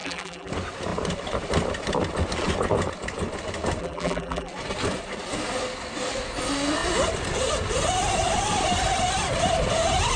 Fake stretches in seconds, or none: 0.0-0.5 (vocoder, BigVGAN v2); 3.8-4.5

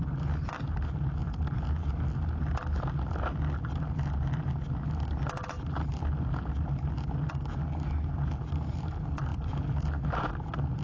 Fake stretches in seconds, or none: 1.2-1.9 (vocoder, BigVGAN v2); 9.3-9.8

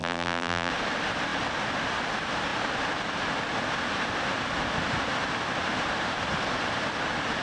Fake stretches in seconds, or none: 0.0-0.7 (vocoder, BigVGAN v2)

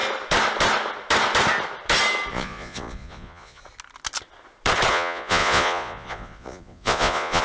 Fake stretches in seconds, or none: 2.3-3.6 (vocoder, Vocos); 4.9-7.4